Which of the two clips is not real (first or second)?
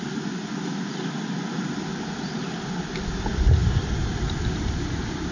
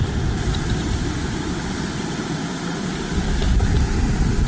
second